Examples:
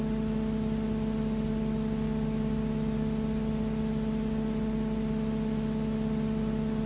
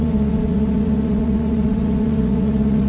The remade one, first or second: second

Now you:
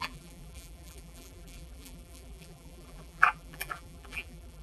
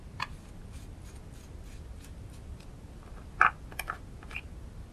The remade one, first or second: first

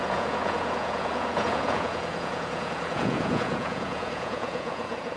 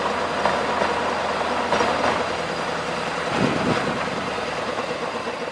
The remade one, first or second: first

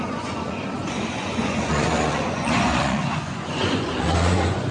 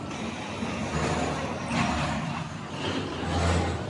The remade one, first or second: first